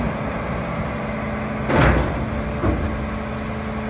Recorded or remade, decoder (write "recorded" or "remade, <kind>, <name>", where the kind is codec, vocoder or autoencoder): recorded